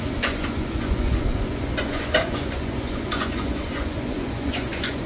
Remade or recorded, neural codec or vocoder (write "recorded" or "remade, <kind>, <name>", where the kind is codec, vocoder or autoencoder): remade, vocoder, Vocos